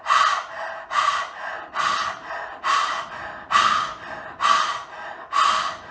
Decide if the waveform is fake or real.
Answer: real